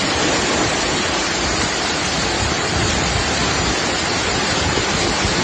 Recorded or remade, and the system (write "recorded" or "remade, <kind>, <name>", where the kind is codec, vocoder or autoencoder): recorded